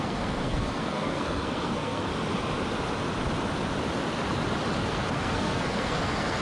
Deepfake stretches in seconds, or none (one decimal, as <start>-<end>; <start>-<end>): 0.0-2.1; 4.8-6.4